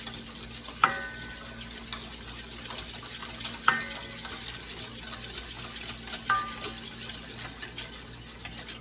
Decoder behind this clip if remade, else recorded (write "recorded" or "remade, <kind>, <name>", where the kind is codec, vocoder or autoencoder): recorded